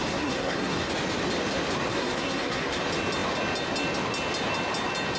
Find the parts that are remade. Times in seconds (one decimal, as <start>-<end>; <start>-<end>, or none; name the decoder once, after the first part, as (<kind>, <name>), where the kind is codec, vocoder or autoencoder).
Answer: 0.0-0.9 (codec, SNAC); 1.9-2.8